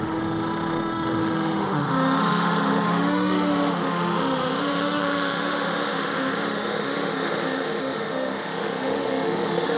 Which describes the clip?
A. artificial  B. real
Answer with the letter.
A